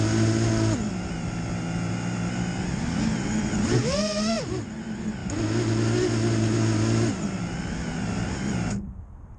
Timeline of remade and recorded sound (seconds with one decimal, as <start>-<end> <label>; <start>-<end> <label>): 0.0-9.4 recorded